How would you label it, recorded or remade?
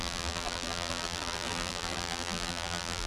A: remade